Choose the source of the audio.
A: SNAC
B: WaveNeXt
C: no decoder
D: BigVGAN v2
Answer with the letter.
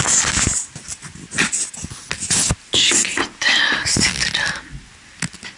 C